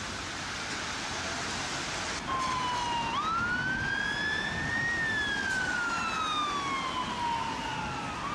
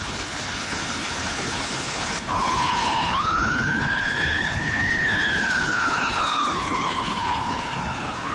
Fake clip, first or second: second